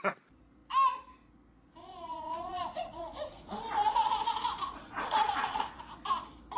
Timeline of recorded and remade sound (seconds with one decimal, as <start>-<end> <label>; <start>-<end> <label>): 0.0-1.8 recorded; 1.8-5.8 remade; 5.8-6.6 recorded